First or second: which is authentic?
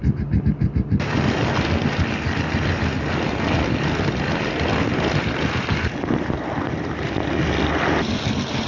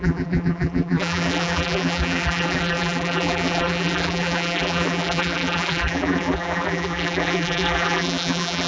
first